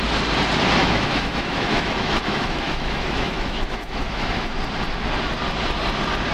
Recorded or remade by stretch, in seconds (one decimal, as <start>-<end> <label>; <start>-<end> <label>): 0.0-0.8 recorded; 0.8-4.6 remade; 4.6-6.3 recorded